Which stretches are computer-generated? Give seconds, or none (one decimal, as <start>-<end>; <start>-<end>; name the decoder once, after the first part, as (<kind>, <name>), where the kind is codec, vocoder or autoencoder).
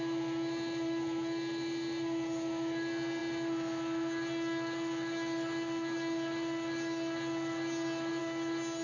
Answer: none